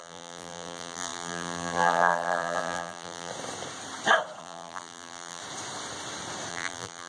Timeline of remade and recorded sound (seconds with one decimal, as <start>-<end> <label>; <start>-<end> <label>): 0.0-3.3 remade; 3.3-4.4 recorded; 4.4-5.4 remade; 5.4-6.5 recorded; 6.5-7.1 remade